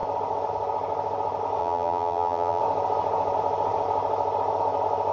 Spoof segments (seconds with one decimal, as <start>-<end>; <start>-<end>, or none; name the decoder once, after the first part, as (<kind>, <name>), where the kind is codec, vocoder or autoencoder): 1.6-2.6 (vocoder, BigVGAN v2)